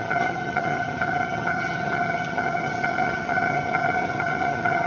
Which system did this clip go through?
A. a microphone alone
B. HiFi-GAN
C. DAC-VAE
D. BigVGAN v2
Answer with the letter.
B